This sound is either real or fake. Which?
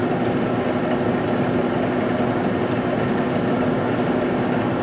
real